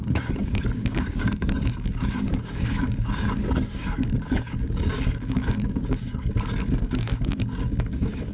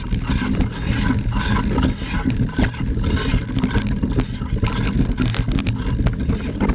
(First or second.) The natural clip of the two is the second